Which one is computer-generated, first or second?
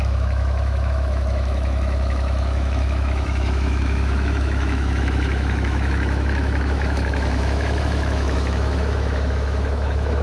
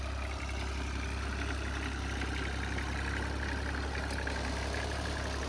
first